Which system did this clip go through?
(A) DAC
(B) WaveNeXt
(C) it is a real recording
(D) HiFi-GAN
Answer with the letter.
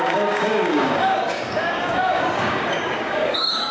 A